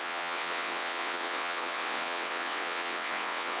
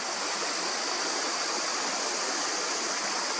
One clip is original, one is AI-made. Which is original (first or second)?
second